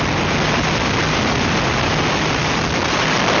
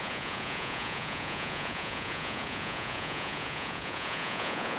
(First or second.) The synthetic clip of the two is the second